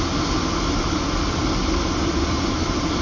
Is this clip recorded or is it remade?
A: recorded